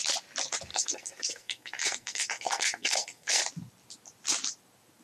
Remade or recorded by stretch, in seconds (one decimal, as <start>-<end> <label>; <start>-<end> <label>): 0.0-0.7 recorded; 0.7-3.4 remade; 3.4-5.0 recorded